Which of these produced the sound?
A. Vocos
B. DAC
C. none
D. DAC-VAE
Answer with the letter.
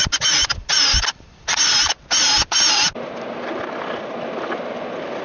C